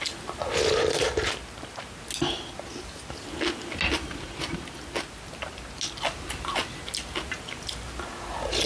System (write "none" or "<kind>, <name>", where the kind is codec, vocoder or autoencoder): none